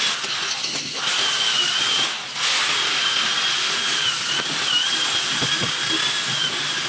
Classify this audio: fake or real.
real